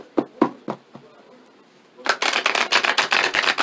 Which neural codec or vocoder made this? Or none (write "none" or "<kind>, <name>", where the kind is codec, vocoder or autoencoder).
none